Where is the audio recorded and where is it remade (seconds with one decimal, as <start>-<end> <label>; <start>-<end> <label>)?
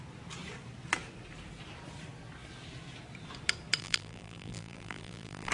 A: 0.0-3.8 recorded; 3.8-5.5 remade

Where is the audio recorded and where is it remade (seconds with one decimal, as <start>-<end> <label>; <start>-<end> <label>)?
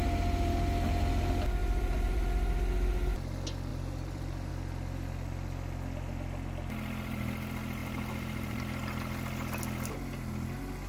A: 0.0-1.6 recorded; 1.6-2.2 remade; 2.2-3.7 recorded; 3.7-4.5 remade; 4.5-7.8 recorded; 7.8-8.6 remade; 8.6-10.9 recorded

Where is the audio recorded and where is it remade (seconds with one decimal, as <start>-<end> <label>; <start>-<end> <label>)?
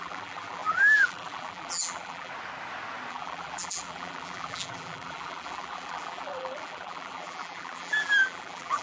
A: 0.0-2.3 remade; 2.3-3.1 recorded; 3.1-8.8 remade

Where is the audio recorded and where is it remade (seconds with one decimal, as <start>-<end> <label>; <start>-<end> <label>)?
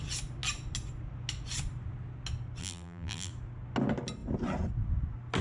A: 0.0-2.6 recorded; 2.6-3.3 remade; 3.3-5.4 recorded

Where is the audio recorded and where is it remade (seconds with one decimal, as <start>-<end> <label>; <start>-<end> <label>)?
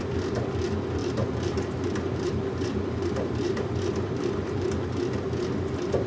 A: 0.0-1.0 recorded; 1.0-4.7 remade; 4.7-6.1 recorded